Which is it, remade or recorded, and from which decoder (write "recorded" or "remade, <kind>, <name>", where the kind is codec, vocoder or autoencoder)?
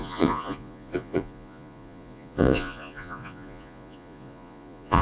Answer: remade, vocoder, Vocos